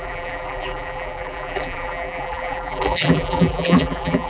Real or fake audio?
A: fake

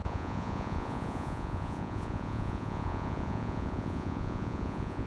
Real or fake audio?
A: fake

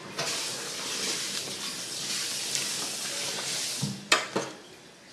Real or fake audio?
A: real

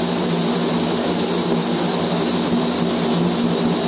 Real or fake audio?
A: real